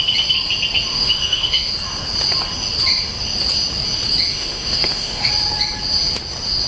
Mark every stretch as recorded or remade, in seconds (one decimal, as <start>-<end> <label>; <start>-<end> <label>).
0.0-0.9 recorded; 0.9-1.7 remade; 1.7-4.3 recorded; 4.3-5.3 remade; 5.3-6.7 recorded